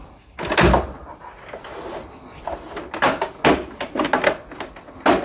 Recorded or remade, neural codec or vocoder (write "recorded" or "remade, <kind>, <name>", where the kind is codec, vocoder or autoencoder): recorded